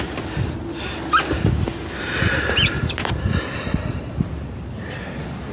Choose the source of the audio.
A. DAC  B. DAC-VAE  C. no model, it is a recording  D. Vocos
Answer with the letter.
C